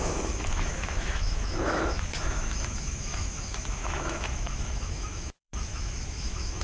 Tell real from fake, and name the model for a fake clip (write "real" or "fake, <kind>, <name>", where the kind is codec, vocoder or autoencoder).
fake, autoencoder, DAC-VAE